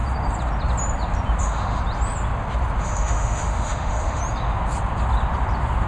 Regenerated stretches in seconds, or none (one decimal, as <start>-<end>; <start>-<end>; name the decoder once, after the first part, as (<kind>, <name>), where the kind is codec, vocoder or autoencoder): 1.4-1.8 (autoencoder, DAC-VAE); 2.8-4.2